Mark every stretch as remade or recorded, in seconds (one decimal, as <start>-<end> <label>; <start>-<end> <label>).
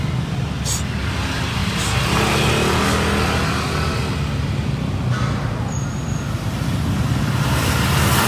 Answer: 0.0-8.3 recorded